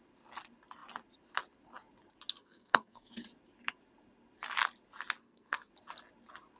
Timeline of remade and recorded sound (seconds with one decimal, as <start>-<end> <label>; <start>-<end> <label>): 0.0-2.4 recorded; 2.4-3.1 remade; 3.1-5.2 recorded; 5.2-5.7 remade; 5.7-6.6 recorded